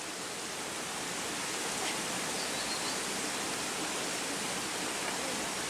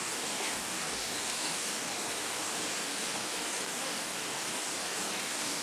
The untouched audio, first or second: first